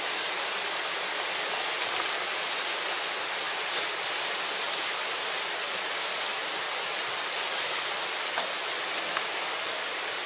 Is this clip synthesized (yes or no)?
no